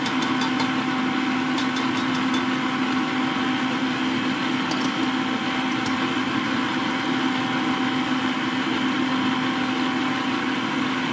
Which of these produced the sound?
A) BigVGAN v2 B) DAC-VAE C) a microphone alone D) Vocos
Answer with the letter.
C